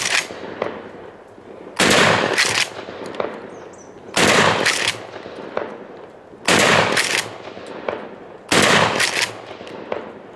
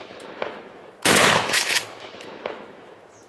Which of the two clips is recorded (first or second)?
first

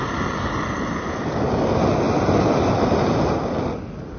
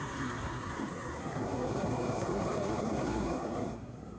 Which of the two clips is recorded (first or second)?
first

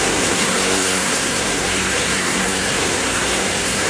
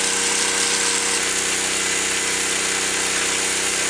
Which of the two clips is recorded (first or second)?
second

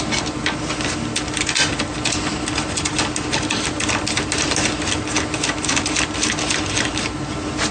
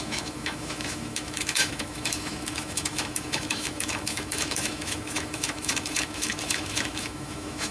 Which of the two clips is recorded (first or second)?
first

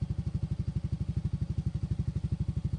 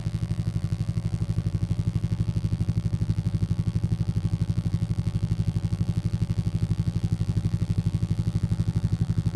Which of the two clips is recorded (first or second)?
first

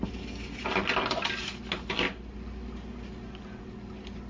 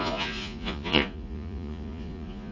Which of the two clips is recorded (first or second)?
first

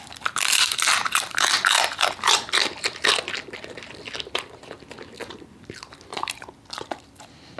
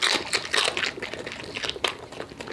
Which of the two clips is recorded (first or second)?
second